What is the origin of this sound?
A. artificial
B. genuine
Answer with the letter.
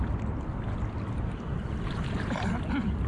B